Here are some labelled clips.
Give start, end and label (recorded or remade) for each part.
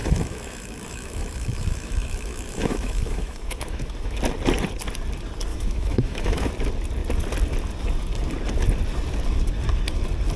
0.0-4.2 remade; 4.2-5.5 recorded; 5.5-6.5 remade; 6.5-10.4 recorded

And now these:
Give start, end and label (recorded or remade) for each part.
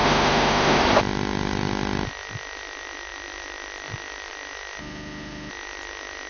0.0-0.8 remade; 0.8-4.8 recorded; 4.8-5.5 remade; 5.5-6.3 recorded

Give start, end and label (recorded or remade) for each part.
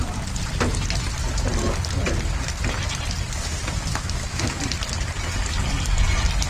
0.0-3.9 recorded; 3.9-4.6 remade; 4.6-6.5 recorded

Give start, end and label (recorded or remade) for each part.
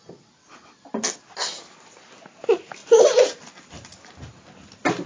0.0-5.1 recorded